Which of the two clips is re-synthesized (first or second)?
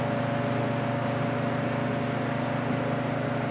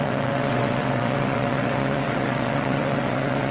second